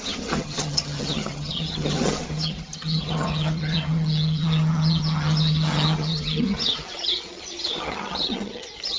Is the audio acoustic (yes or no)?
no